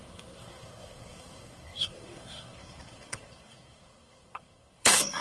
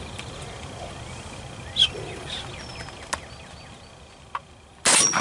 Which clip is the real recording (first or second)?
second